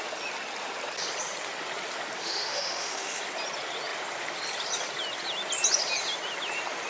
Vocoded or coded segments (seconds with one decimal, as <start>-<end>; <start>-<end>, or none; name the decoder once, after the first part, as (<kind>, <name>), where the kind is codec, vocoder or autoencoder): 2.2-3.2 (autoencoder, DAC-VAE)